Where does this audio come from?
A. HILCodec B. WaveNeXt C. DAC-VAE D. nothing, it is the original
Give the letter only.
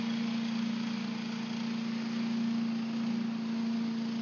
D